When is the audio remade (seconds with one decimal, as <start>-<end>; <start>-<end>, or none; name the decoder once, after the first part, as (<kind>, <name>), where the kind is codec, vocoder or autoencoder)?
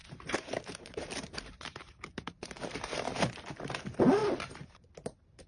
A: 0.0-3.3 (vocoder, BigVGAN v2); 4.2-4.9